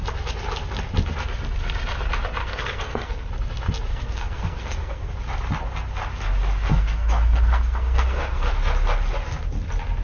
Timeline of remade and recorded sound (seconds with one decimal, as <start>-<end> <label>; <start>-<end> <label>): 0.0-2.4 recorded; 2.4-3.3 remade; 3.3-3.9 recorded; 3.9-5.1 remade; 5.1-6.7 recorded; 6.7-8.5 remade; 8.5-10.0 recorded